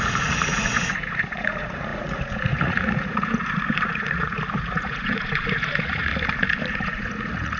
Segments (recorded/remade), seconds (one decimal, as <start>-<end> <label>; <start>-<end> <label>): 0.0-6.1 remade; 6.1-6.7 recorded; 6.7-7.6 remade